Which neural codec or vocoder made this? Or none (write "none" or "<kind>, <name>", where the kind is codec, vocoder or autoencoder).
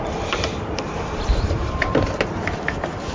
vocoder, BigVGAN v2